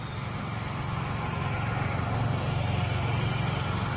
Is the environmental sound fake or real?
real